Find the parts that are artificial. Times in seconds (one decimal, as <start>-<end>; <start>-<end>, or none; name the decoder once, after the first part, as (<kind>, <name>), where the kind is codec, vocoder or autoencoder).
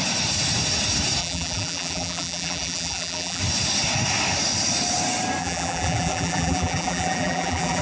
1.2-3.4 (vocoder, BigVGAN v2); 5.4-7.8